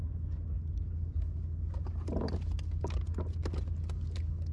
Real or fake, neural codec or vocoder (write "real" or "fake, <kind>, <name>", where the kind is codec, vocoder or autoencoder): real